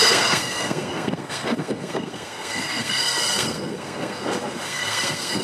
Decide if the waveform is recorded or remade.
remade